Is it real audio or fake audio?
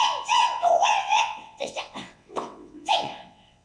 fake